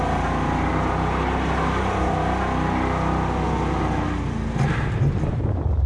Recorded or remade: recorded